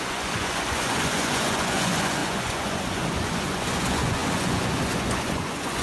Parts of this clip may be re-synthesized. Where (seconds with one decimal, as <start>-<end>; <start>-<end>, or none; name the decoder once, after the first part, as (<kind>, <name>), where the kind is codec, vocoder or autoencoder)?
0.0-5.8 (vocoder, Vocos)